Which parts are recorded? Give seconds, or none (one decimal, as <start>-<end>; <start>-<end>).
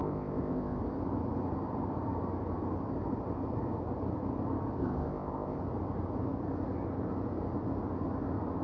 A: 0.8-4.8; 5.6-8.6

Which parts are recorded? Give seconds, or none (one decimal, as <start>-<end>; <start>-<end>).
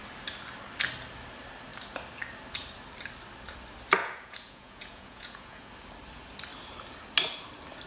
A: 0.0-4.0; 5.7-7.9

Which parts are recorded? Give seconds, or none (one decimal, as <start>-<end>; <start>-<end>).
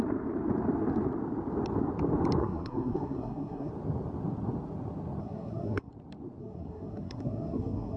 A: 0.0-2.4; 3.7-5.2; 5.9-6.4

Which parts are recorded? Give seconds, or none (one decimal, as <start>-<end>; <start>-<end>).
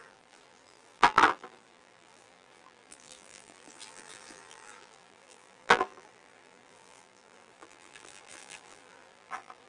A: none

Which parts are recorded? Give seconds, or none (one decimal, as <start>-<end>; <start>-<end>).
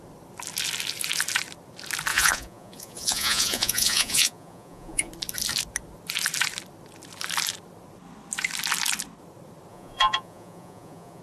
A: 0.0-2.1; 5.1-9.7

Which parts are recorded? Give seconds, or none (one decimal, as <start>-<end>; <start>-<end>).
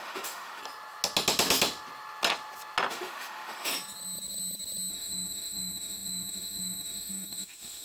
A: 0.6-2.9; 3.7-4.9